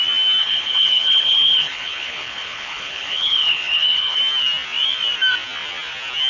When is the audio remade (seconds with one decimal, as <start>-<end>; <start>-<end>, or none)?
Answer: 0.4-4.2